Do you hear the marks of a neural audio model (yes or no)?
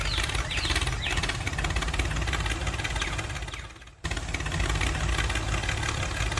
no